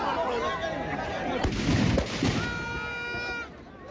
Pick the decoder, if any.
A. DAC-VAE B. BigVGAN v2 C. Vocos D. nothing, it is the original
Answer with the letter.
D